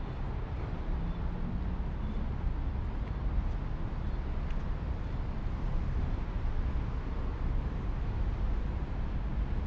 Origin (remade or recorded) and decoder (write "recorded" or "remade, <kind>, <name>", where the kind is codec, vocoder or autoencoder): recorded